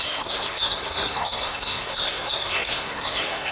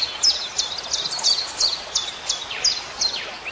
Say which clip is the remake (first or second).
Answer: first